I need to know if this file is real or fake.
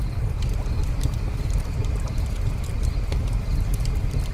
real